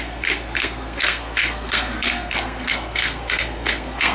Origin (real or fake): fake